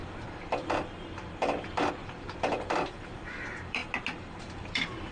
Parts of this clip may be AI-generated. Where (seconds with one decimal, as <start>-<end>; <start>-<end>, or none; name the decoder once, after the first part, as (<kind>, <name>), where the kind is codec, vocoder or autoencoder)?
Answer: 0.0-3.8 (vocoder, BigVGAN v2); 4.4-5.1